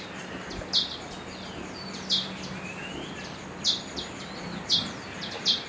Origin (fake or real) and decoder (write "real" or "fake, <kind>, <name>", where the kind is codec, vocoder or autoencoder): real